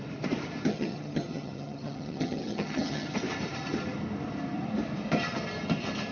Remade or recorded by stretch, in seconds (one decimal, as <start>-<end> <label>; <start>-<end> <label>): 0.0-0.7 recorded; 0.7-3.1 remade; 3.1-6.1 recorded